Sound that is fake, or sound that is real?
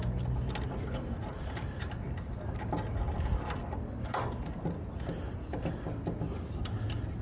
real